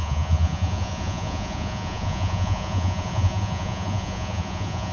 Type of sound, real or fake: fake